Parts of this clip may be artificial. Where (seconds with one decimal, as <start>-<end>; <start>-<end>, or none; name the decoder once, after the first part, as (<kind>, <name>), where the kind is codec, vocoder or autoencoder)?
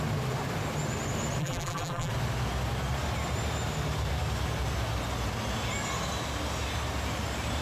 1.4-2.1 (vocoder, BigVGAN v2)